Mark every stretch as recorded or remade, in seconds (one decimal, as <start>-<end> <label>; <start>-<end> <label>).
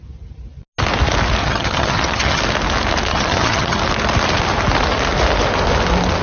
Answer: 0.0-1.4 recorded; 1.4-2.4 remade; 2.4-3.1 recorded; 3.1-3.8 remade; 3.8-6.2 recorded